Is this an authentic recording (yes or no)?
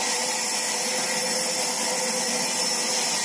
yes